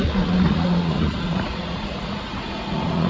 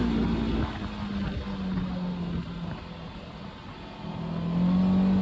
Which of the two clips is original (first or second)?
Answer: second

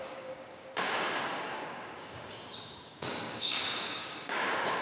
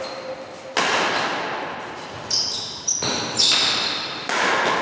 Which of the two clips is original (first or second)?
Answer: second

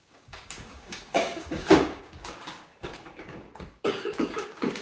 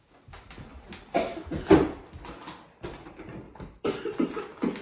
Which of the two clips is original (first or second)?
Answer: second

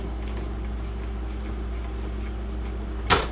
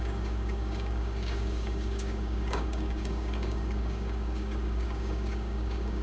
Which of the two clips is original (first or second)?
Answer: first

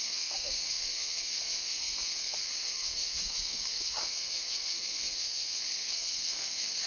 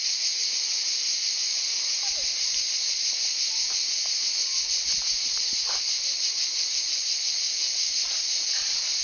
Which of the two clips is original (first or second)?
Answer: second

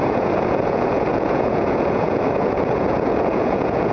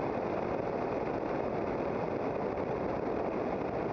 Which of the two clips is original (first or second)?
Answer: second